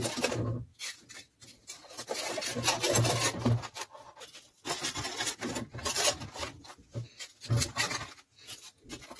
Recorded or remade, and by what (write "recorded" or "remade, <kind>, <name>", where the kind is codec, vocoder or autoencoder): recorded